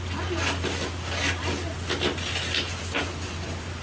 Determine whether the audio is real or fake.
real